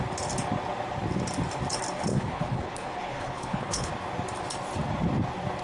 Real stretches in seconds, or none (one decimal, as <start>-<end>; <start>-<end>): 0.0-2.1; 3.9-5.6